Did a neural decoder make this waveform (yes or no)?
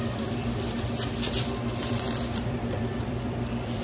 yes